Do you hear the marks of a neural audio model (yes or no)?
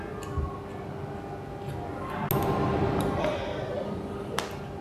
no